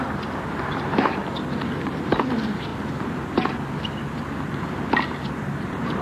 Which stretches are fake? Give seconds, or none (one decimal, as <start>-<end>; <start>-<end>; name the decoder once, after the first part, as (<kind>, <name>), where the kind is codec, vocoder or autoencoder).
0.0-1.2 (vocoder, BigVGAN v2); 1.8-2.7; 5.3-6.0